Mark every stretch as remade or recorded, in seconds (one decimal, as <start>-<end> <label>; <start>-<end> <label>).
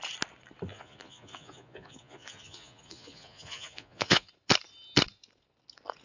0.0-0.7 recorded; 0.7-4.3 remade; 4.3-6.0 recorded